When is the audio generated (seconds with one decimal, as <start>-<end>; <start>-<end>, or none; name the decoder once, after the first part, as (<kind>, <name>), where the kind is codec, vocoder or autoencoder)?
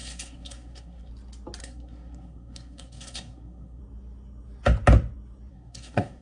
0.0-1.1 (codec, SNAC); 1.6-3.8; 5.5-6.2